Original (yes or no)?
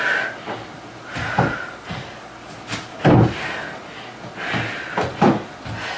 yes